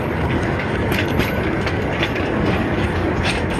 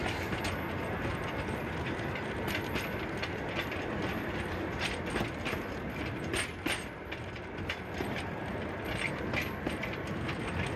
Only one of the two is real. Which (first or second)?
second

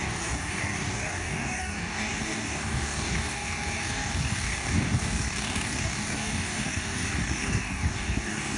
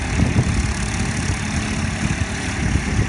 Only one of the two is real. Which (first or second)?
second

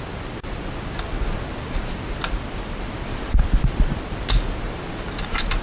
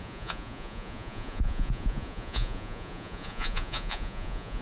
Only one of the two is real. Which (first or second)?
first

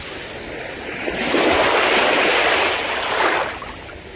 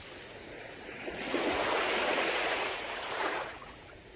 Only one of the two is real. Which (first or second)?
first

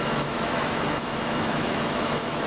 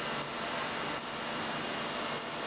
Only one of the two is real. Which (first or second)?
second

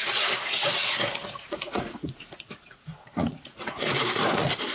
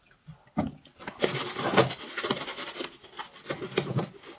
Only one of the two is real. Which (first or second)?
second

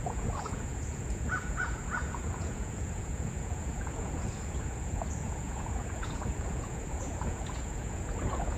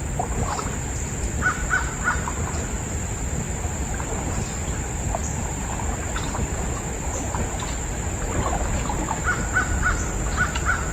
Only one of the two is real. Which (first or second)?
second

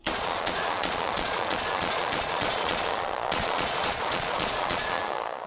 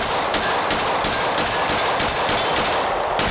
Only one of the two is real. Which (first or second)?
second